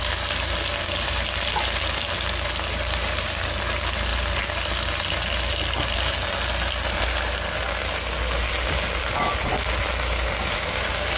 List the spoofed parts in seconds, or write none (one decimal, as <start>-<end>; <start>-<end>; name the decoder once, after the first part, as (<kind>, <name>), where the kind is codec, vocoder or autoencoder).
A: none